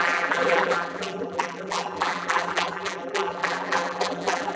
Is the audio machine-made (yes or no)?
yes